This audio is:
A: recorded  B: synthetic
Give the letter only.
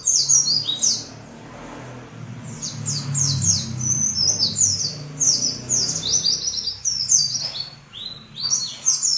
A